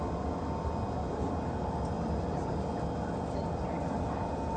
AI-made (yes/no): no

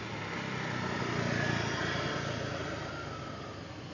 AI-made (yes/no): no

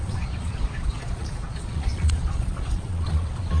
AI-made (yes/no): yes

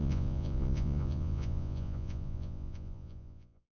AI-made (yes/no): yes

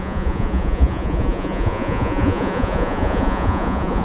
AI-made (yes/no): yes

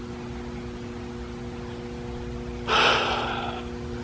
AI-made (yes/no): no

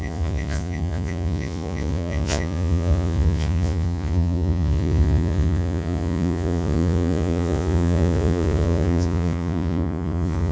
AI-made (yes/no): yes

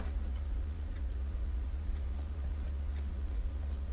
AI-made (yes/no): yes